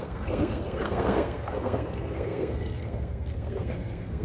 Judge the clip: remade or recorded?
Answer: remade